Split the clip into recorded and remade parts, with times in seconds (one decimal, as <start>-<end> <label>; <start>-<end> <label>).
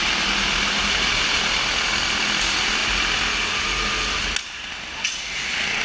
0.0-5.8 recorded